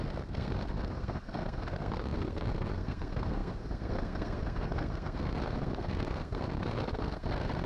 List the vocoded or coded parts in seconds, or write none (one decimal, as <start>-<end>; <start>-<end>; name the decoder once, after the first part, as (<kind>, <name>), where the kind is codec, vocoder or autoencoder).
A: 0.0-7.7 (codec, SNAC)

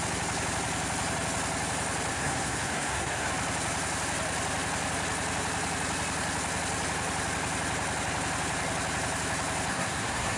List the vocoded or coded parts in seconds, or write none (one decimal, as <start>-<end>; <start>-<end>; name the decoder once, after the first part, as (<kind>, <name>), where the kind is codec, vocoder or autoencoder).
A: 2.1-3.3 (codec, SNAC); 9.7-10.4

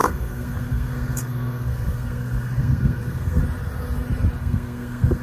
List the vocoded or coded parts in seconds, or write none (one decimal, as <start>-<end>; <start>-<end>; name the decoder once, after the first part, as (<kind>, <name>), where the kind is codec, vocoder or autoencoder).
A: 0.0-3.4 (codec, SNAC); 4.4-5.2